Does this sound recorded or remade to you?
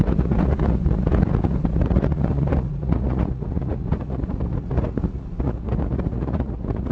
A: remade